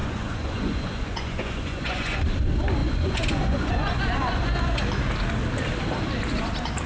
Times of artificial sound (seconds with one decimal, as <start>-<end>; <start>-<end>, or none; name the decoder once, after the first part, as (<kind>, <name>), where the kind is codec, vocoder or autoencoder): 0.0-2.2 (vocoder, Vocos); 2.8-4.8